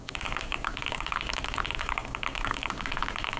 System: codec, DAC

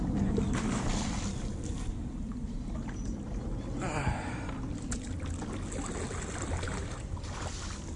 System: none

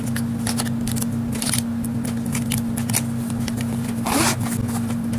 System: none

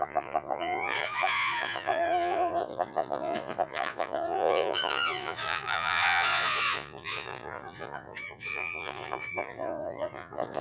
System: vocoder, Vocos